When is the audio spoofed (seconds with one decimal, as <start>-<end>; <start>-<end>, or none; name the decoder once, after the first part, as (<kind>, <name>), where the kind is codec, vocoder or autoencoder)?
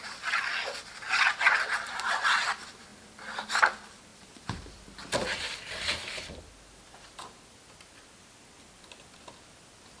none